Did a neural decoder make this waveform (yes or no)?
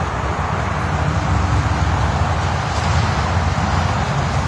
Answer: no